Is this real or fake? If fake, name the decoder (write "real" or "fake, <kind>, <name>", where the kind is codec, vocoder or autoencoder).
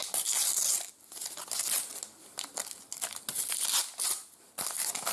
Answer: real